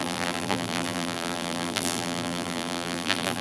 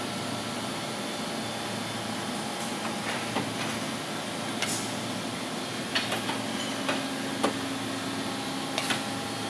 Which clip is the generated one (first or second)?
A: first